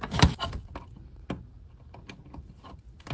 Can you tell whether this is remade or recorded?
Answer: recorded